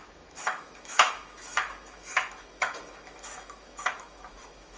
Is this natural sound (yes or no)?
no